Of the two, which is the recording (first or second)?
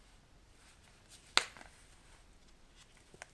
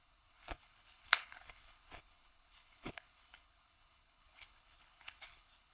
first